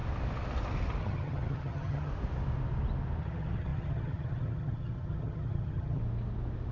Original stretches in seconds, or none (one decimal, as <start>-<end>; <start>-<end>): 0.0-1.0; 2.1-3.2; 6.0-6.7